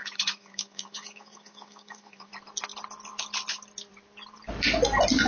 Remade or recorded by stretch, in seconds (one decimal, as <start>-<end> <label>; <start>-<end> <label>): 0.0-2.3 remade; 2.3-5.3 recorded

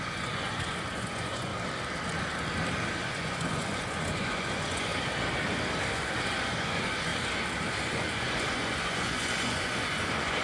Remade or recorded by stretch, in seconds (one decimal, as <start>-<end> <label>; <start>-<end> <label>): 0.0-1.5 remade; 1.5-2.9 recorded; 2.9-4.9 remade; 4.9-5.9 recorded; 5.9-7.1 remade; 7.1-7.8 recorded; 7.8-10.4 remade

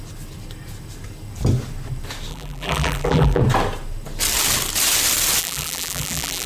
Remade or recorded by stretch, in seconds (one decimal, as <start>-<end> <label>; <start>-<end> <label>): 0.0-2.3 recorded; 2.3-3.4 remade; 3.4-5.4 recorded; 5.4-6.5 remade

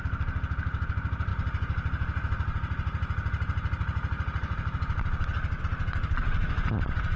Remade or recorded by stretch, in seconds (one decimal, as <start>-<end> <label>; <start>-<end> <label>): 0.0-7.2 recorded

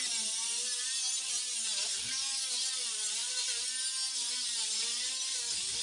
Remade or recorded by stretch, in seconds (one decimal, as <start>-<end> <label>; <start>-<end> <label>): 0.0-5.8 recorded